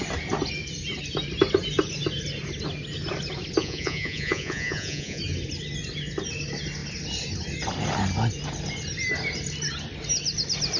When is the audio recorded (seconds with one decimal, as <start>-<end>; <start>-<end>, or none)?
0.0-3.6; 5.2-10.8